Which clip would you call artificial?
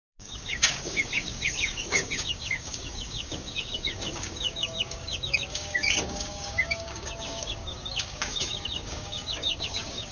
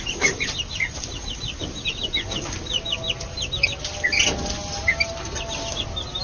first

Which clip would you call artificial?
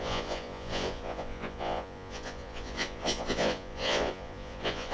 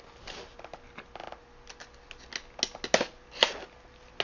first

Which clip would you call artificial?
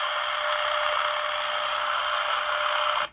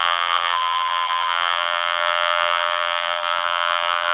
second